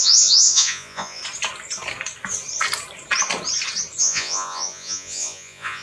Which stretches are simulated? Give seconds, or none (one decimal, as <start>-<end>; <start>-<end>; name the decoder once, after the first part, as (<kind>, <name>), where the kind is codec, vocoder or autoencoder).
0.0-1.2 (vocoder, Vocos); 4.0-5.8